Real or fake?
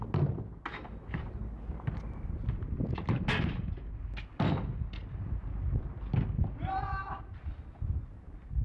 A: real